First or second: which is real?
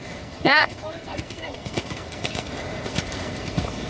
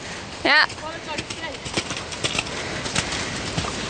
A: second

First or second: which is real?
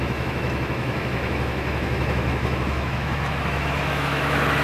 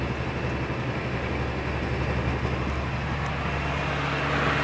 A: second